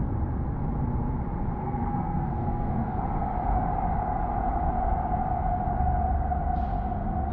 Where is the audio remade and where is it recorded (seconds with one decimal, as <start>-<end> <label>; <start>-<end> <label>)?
0.0-1.6 recorded; 1.6-3.0 remade; 3.0-7.3 recorded